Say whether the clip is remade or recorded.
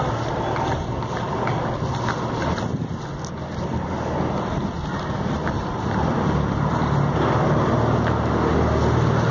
recorded